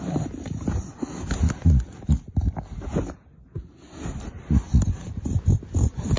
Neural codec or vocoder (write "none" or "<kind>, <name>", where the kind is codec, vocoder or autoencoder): none